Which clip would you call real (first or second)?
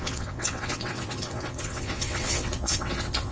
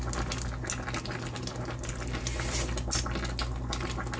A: second